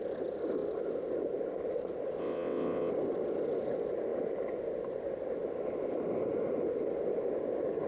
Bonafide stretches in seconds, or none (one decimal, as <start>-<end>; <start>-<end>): 0.0-2.2; 2.9-7.9